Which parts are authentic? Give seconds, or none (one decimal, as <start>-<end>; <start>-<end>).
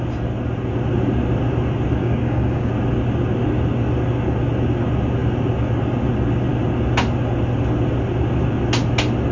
0.0-2.0; 2.7-9.3